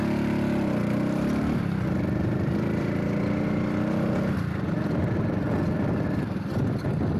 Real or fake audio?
real